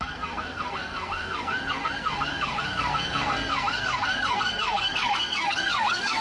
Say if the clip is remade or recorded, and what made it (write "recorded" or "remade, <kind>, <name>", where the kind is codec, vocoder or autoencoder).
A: remade, codec, SNAC